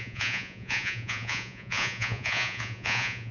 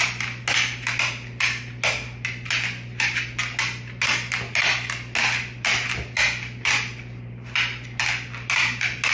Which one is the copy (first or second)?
first